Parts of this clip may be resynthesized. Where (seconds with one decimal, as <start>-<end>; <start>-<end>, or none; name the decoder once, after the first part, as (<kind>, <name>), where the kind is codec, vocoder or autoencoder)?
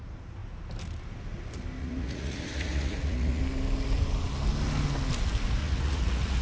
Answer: 1.8-3.4 (vocoder, Vocos); 5.6-6.4